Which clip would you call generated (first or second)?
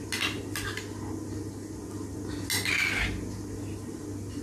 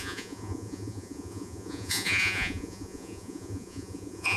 second